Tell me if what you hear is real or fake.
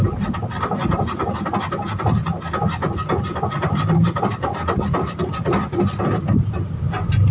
real